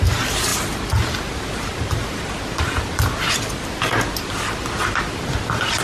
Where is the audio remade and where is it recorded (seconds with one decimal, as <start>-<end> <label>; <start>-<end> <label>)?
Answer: 0.0-5.8 recorded